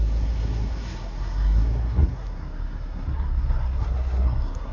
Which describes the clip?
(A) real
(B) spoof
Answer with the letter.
B